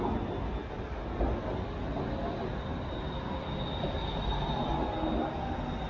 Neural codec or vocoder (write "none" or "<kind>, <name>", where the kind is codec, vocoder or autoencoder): none